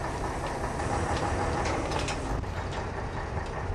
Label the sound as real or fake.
real